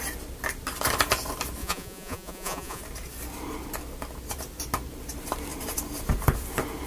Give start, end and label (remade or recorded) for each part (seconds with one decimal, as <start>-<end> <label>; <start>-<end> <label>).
0.0-1.6 recorded; 1.6-2.8 remade; 2.8-6.9 recorded